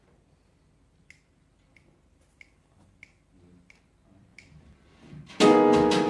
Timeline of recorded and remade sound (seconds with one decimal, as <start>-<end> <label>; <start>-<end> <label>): 0.0-6.1 recorded